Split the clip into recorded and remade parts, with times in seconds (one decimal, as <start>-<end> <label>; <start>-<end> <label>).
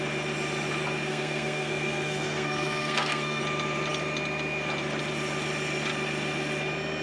0.0-1.1 recorded; 1.1-3.4 remade; 3.4-7.0 recorded